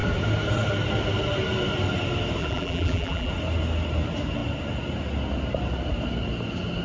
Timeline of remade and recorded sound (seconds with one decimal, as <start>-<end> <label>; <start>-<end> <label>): 0.0-2.4 recorded; 2.4-3.3 remade; 3.3-6.8 recorded